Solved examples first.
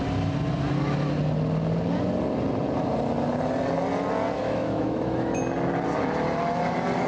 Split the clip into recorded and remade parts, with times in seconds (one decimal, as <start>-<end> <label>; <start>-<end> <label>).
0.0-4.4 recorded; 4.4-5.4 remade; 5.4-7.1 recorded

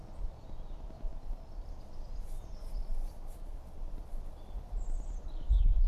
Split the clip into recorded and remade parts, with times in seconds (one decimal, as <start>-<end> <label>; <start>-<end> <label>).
0.0-5.9 recorded

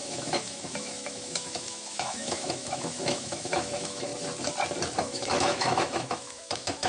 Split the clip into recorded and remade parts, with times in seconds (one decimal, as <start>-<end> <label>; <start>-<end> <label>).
0.0-4.1 remade; 4.1-5.0 recorded; 5.0-6.9 remade

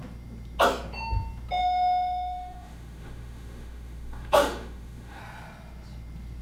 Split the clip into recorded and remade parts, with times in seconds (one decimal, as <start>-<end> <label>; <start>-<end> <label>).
0.0-1.6 recorded; 1.6-5.2 remade; 5.2-6.4 recorded

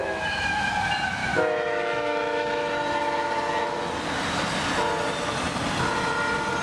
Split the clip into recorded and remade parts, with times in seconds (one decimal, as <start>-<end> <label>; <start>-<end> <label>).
0.0-0.7 remade; 0.7-1.2 recorded; 1.2-2.7 remade; 2.7-6.6 recorded